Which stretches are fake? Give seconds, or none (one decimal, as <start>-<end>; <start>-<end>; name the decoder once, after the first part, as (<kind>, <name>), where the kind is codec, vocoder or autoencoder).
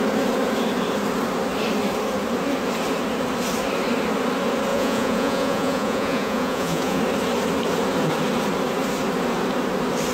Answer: 4.7-7.0 (vocoder, Vocos)